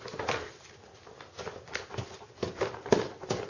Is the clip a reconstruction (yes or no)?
no